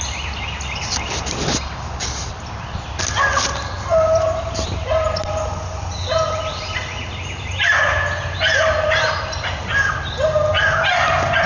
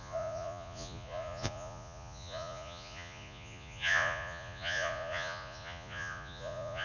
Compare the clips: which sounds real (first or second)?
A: first